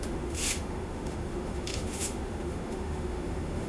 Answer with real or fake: fake